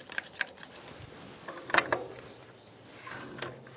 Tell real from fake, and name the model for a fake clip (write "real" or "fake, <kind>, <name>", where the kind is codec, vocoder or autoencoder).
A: real